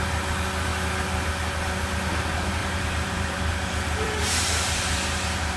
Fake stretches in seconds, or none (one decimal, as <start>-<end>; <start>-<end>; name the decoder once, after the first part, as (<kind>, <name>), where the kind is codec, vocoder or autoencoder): 2.6-5.6 (vocoder, BigVGAN v2)